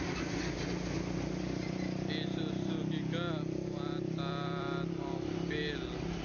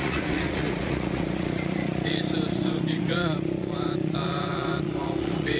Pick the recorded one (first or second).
first